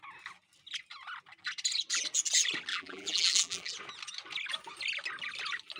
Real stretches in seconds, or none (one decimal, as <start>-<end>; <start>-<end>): 0.0-2.7; 3.7-5.8